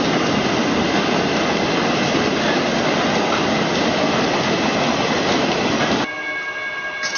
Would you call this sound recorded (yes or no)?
yes